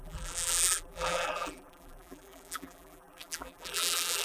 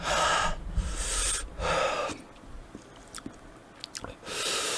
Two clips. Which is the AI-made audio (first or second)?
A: first